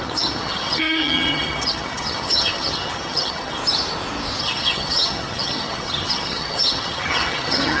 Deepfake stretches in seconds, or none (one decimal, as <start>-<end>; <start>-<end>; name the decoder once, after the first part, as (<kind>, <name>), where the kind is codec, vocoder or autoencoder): 0.0-3.6 (vocoder, HiFi-GAN); 4.4-7.8

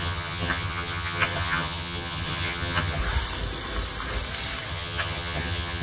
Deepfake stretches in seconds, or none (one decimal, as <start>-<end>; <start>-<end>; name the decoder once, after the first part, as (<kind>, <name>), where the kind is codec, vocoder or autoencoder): 0.0-3.0 (vocoder, HiFi-GAN); 4.7-5.8

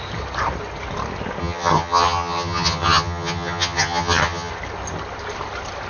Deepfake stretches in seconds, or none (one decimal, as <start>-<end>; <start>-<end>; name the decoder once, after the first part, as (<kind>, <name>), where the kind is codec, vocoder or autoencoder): 1.4-4.5 (vocoder, HiFi-GAN)